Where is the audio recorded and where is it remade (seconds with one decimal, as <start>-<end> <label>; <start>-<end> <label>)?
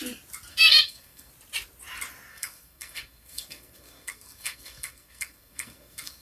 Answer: 0.0-0.5 recorded; 0.5-1.3 remade; 1.3-2.3 recorded; 2.3-6.2 remade